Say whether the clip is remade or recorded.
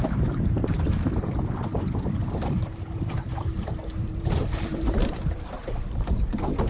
remade